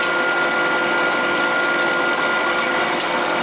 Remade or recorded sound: recorded